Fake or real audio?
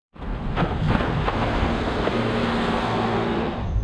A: fake